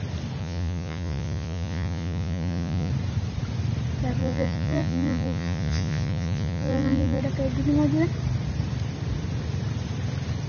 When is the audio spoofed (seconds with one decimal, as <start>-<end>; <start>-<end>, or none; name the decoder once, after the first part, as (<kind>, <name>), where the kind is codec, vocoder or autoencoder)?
0.4-2.9 (vocoder, Vocos); 4.2-7.2